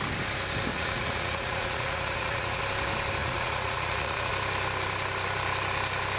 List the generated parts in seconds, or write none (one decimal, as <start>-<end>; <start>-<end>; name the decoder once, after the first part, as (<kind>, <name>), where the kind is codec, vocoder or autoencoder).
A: 0.7-2.6 (vocoder, Vocos); 3.2-4.3